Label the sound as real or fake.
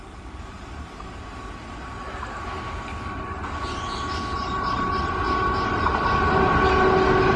real